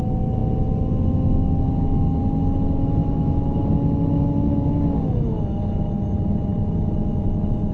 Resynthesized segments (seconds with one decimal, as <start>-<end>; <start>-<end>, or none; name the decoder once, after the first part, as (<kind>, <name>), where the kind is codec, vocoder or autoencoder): 3.0-3.7 (autoencoder, DAC-VAE)

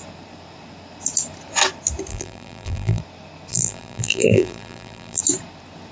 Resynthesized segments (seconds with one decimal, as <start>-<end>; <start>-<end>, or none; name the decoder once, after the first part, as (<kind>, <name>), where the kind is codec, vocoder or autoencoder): 2.1-3.0 (vocoder, BigVGAN v2); 3.5-5.2

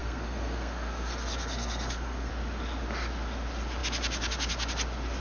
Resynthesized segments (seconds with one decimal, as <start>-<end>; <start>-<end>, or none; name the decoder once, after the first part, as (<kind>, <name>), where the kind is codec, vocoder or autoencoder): 0.0-2.3 (codec, SNAC)

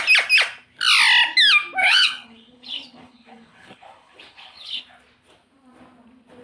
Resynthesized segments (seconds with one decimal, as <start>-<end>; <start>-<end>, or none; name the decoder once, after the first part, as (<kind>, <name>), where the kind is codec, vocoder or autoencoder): 1.8-4.8 (codec, HILCodec)

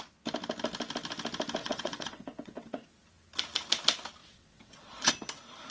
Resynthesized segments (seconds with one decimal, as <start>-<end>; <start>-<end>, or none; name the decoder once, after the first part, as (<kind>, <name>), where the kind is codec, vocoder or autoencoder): 1.6-2.9 (vocoder, WaveNeXt); 4.2-5.1

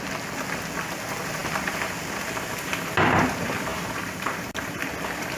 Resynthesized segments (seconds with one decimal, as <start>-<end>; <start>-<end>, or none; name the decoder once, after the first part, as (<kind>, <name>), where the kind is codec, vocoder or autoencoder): 1.4-2.7 (vocoder, BigVGAN v2); 3.7-4.9

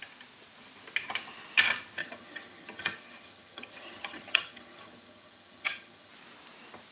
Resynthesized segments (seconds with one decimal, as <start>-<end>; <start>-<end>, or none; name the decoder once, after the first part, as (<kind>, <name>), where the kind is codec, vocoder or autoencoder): 2.0-6.1 (vocoder, HiFi-GAN)

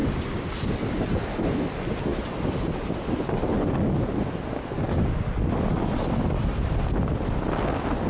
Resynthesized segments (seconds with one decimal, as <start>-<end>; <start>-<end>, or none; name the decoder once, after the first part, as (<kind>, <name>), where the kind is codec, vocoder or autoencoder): none